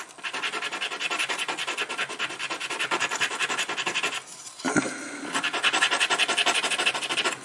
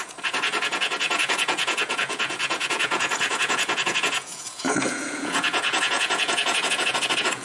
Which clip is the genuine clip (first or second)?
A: first